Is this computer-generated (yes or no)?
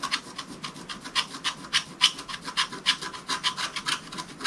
no